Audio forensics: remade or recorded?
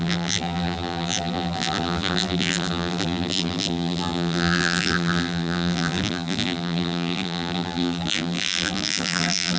remade